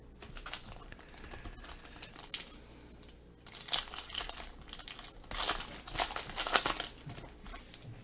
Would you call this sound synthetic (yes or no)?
no